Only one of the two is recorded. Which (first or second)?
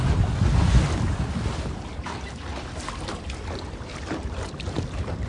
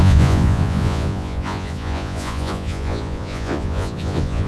first